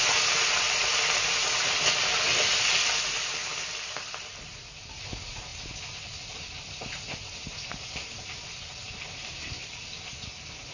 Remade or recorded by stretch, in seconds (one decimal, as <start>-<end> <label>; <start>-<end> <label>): 0.0-10.7 recorded